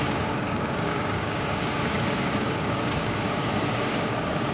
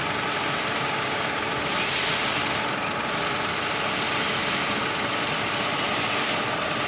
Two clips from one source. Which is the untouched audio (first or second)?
second